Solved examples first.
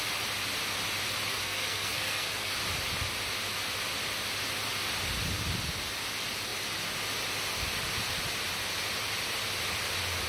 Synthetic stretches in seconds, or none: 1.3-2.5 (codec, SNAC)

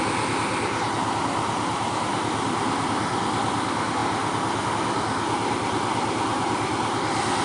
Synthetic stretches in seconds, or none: 4.0-4.7 (vocoder, BigVGAN v2)

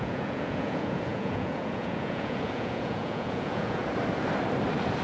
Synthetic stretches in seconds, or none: 0.0-3.8 (vocoder, Vocos)

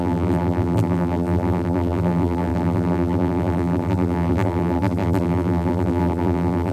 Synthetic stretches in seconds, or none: 0.0-6.7 (vocoder, BigVGAN v2)

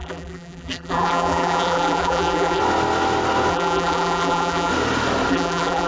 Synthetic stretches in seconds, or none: 0.0-2.6 (vocoder, BigVGAN v2); 3.5-4.7; 5.3-5.9

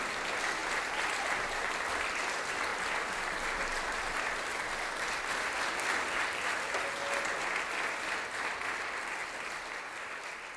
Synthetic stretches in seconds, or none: 0.6-1.9 (vocoder, BigVGAN v2); 9.2-9.9